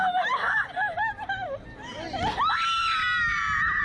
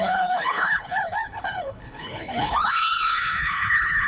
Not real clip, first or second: second